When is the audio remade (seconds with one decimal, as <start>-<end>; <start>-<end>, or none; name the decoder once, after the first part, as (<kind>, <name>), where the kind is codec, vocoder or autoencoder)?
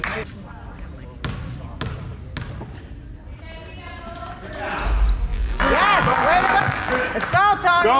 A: 5.3-6.9 (vocoder, BigVGAN v2)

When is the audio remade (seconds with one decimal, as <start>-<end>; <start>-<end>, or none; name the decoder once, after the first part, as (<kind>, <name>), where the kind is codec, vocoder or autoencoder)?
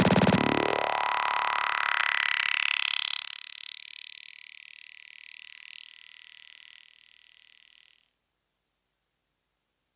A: none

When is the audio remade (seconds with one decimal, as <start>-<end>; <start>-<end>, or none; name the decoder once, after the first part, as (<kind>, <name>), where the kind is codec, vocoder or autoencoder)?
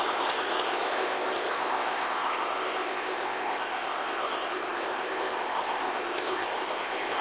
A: 0.0-7.2 (codec, ZipCodec)